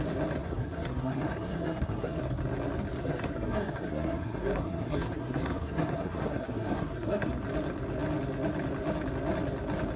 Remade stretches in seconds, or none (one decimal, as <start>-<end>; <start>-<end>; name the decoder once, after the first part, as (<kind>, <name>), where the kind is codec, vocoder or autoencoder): 0.4-2.2 (codec, SNAC); 3.0-7.4